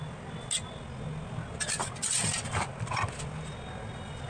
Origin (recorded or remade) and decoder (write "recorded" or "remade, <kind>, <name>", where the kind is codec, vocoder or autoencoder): recorded